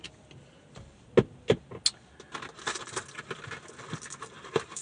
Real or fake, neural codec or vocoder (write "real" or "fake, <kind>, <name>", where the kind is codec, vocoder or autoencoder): real